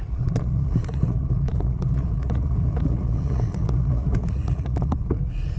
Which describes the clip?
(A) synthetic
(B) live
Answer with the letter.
A